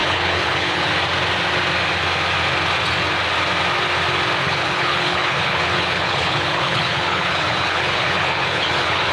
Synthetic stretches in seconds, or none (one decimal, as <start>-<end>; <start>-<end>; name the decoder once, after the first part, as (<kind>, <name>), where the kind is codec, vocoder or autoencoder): 0.0-0.9 (codec, HILCodec); 4.4-9.1